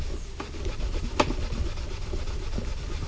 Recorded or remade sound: recorded